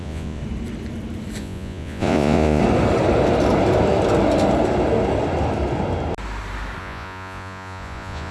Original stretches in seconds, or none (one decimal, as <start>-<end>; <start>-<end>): 0.4-1.4; 2.6-6.8